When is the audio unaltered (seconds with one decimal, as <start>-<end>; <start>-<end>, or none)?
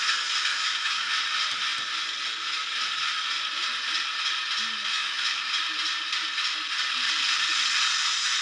0.0-0.5; 1.1-4.9; 5.5-8.4